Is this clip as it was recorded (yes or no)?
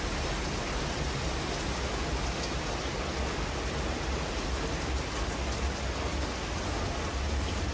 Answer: yes